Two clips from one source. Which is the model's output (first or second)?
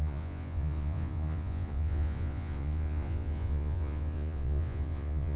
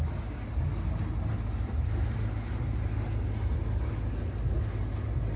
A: first